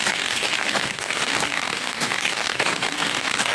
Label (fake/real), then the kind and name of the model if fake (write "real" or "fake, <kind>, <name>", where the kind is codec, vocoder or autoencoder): fake, codec, DAC